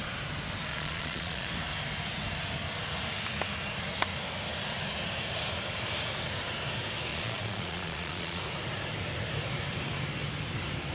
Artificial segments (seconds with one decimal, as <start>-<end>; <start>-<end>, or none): 0.7-1.5; 7.1-8.4